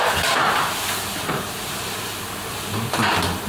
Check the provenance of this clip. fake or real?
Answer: real